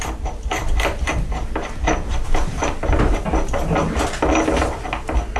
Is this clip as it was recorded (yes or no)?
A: yes